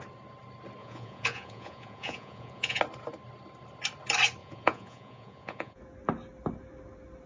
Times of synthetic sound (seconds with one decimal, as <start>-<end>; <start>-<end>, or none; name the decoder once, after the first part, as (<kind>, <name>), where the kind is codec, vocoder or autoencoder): 0.8-2.8 (vocoder, Vocos); 4.4-5.8